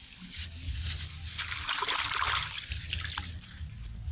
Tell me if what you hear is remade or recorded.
recorded